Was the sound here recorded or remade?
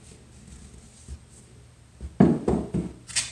recorded